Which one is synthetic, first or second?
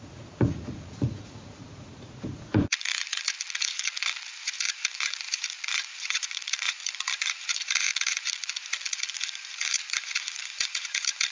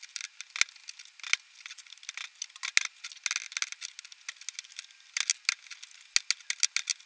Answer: first